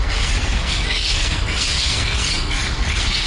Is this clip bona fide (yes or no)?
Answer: no